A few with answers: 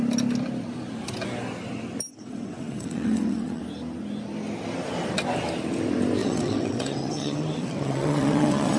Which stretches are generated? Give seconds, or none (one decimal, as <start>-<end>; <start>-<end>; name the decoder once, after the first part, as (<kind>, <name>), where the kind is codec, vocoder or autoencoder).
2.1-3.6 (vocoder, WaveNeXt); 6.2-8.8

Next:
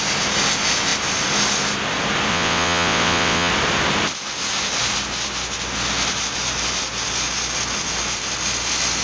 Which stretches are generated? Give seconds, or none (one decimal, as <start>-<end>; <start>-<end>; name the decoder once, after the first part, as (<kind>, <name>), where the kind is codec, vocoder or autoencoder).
2.3-3.5 (vocoder, WaveNeXt)

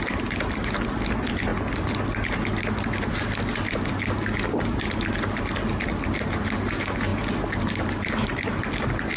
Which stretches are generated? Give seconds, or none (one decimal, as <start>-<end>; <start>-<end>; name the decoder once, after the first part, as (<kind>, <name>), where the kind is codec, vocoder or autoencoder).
none